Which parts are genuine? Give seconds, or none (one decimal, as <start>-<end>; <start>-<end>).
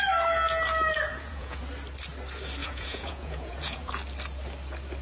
0.0-1.1; 1.6-2.6; 3.9-5.0